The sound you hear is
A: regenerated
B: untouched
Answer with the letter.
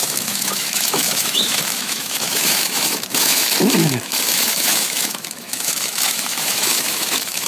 A